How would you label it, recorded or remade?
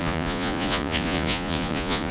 remade